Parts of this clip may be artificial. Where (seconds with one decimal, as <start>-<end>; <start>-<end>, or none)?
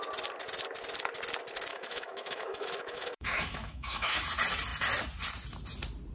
1.7-4.2